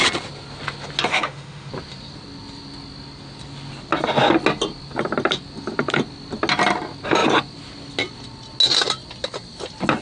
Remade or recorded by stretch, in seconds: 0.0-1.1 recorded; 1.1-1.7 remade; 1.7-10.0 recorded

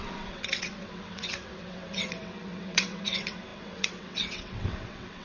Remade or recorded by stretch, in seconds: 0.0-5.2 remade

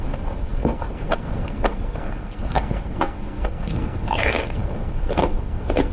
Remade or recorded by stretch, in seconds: 0.0-5.9 remade

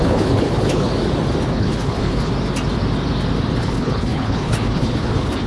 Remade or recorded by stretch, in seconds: 0.0-0.9 remade; 0.9-1.5 recorded; 1.5-2.3 remade; 2.3-3.6 recorded; 3.6-5.5 remade